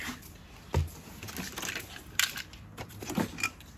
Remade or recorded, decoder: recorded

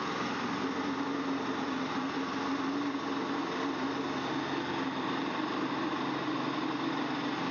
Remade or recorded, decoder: recorded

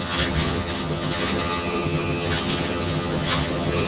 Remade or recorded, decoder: remade, vocoder, HiFi-GAN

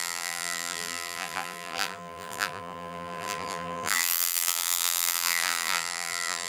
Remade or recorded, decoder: remade, vocoder, BigVGAN v2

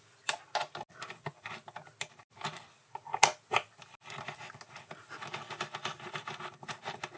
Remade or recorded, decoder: recorded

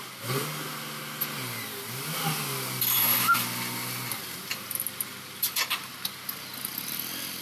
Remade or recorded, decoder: recorded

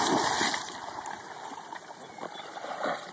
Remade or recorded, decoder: recorded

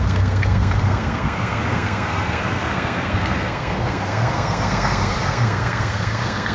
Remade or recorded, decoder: remade, codec, SNAC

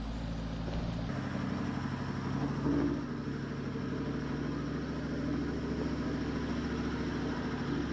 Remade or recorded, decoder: recorded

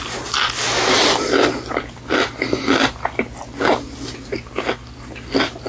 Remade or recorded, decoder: recorded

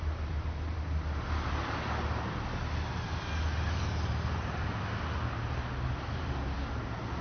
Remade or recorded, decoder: recorded